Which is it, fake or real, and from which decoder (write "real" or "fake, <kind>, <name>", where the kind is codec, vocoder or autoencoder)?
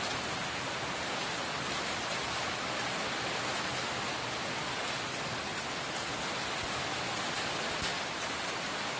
real